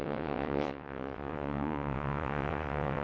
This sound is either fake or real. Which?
fake